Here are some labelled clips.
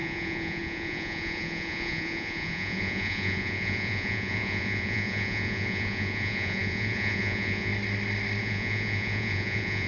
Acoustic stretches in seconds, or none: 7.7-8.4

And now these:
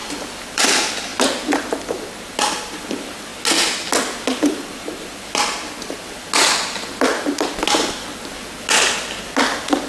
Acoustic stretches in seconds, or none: 0.6-9.9

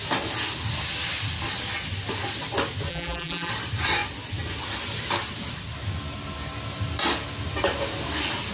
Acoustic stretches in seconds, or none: 0.0-2.9; 3.5-8.5